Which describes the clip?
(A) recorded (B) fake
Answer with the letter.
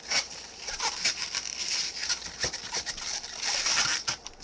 B